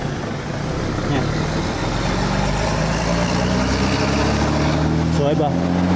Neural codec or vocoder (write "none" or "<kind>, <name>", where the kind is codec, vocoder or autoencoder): none